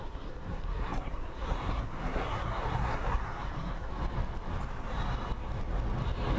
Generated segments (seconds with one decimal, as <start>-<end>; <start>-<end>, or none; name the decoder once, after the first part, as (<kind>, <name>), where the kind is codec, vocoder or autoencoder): 0.0-3.9 (codec, SNAC)